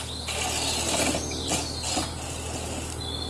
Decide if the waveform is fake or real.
real